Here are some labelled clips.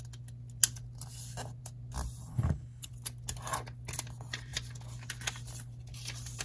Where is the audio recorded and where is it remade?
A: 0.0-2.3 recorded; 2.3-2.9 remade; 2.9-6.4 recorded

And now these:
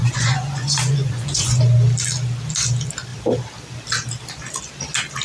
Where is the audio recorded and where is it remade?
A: 0.0-1.6 remade; 1.6-5.2 recorded

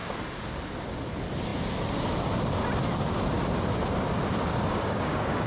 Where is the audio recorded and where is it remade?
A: 0.0-4.5 recorded; 4.5-5.5 remade

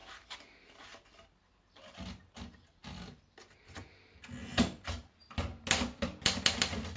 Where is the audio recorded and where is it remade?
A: 0.0-7.0 recorded

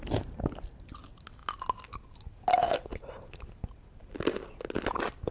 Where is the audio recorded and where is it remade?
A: 0.0-5.3 recorded

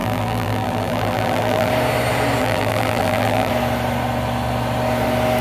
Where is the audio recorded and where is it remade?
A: 0.0-1.7 remade; 1.7-2.4 recorded; 2.4-3.5 remade; 3.5-5.4 recorded

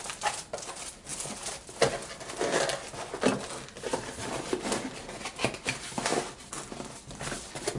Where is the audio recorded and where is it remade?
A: 0.0-7.8 recorded

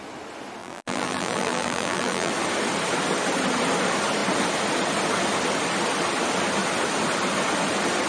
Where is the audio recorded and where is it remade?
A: 0.0-0.6 recorded; 0.6-2.3 remade; 2.3-8.1 recorded